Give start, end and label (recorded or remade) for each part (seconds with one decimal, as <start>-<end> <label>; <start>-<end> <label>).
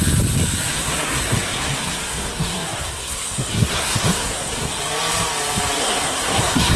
0.0-0.7 recorded; 0.7-4.8 remade; 4.8-5.8 recorded; 5.8-6.8 remade